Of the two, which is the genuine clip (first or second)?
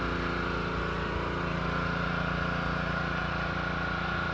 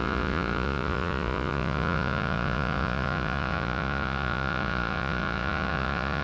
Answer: first